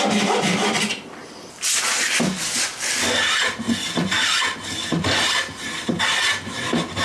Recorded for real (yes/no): yes